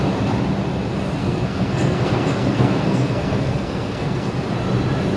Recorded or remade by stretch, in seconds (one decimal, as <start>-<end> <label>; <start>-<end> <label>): 0.0-1.2 recorded; 1.2-4.3 remade; 4.3-5.2 recorded